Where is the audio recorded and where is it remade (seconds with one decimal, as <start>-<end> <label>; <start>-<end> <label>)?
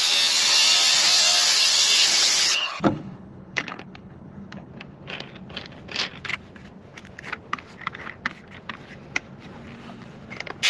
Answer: 0.0-2.0 recorded; 2.0-4.7 remade; 4.7-10.7 recorded